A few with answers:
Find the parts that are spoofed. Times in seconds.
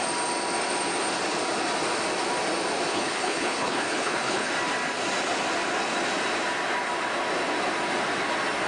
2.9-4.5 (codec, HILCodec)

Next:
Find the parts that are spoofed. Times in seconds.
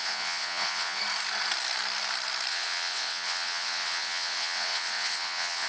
0.0-1.0 (vocoder, WaveNeXt); 2.5-5.7